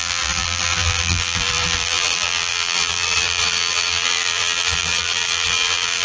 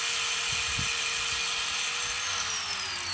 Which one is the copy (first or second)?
first